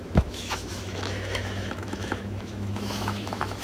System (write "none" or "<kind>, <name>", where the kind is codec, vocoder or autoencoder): autoencoder, DAC-VAE